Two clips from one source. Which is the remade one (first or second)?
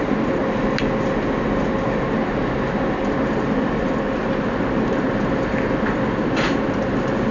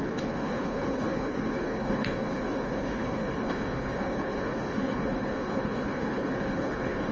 second